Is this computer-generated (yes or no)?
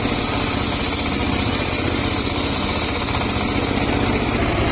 no